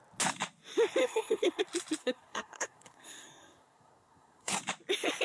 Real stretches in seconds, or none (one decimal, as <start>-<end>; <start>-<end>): 0.0-1.0; 1.6-2.0; 4.6-5.2